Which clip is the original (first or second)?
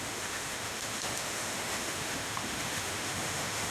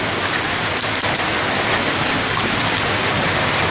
second